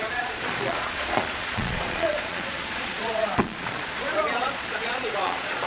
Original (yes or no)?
no